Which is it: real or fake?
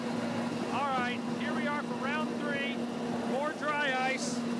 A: real